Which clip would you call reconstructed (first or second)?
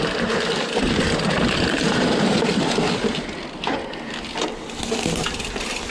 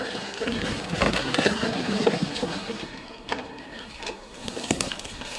second